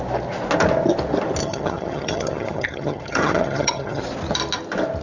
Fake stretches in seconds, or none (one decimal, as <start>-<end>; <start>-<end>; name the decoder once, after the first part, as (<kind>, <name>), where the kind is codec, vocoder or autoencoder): 1.4-4.0 (vocoder, HiFi-GAN)